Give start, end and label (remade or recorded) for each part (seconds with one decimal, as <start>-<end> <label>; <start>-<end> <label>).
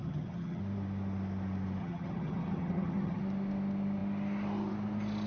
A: 0.0-0.6 remade; 0.6-1.8 recorded; 1.8-3.2 remade; 3.2-5.3 recorded